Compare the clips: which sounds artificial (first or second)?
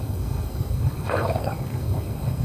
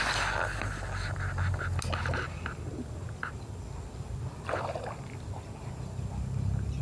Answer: first